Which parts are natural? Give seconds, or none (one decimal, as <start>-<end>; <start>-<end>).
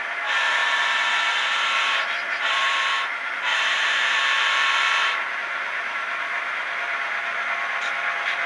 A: none